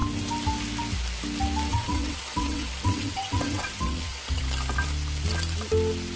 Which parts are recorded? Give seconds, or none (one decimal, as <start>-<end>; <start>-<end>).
0.0-1.7; 4.4-6.2